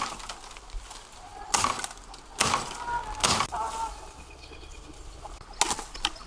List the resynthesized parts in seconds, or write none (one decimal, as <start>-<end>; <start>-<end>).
none